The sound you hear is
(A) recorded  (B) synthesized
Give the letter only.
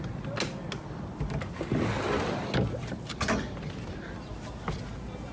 A